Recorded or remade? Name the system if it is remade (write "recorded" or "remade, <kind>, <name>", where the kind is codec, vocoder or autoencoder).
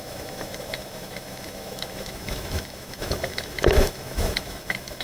remade, autoencoder, DAC-VAE